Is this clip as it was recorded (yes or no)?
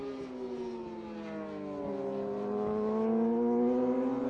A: yes